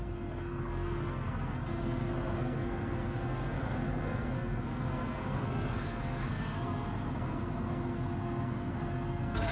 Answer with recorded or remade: remade